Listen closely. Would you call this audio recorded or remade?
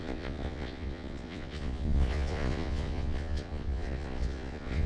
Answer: remade